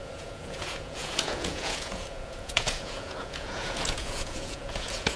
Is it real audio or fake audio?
fake